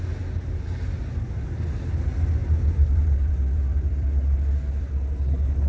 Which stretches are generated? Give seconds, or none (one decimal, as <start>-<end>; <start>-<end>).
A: 2.4-4.9

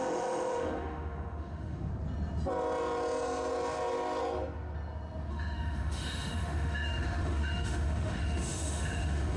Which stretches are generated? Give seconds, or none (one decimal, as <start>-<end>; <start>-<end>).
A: 0.0-1.9; 5.3-9.4

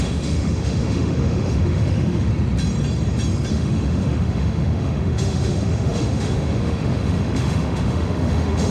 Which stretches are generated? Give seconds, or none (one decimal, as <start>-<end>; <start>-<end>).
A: 0.0-2.3; 3.5-8.7

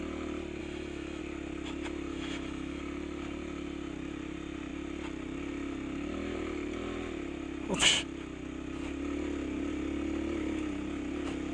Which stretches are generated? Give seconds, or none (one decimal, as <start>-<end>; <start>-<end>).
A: 0.6-1.2; 2.1-2.8

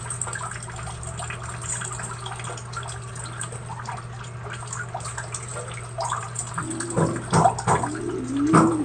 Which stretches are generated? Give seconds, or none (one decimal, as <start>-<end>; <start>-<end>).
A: none

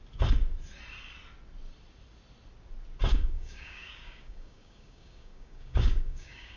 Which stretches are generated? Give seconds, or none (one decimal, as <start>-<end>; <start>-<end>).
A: 3.1-6.6

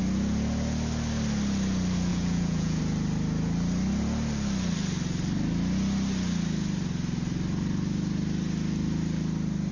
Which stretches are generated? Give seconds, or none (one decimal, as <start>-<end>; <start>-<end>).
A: 2.1-2.8

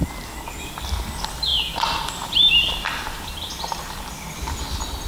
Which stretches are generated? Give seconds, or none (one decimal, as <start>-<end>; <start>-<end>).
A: 0.0-0.6; 1.5-4.5